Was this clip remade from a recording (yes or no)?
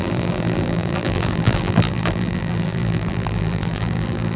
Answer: yes